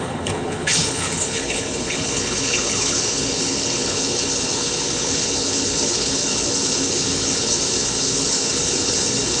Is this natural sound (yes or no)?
no